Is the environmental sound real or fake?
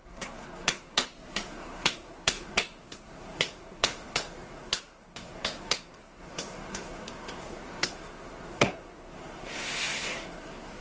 fake